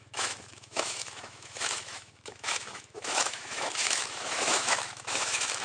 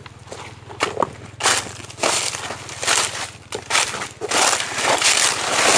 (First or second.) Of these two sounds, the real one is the second